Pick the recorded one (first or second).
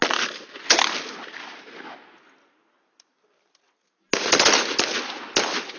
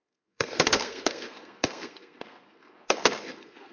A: first